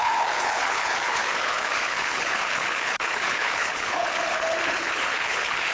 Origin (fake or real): fake